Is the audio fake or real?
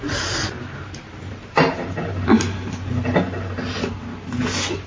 real